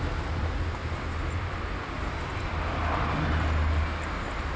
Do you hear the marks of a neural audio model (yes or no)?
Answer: no